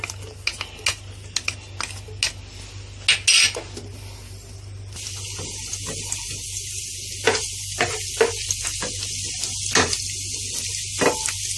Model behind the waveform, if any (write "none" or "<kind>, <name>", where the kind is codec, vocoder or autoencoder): none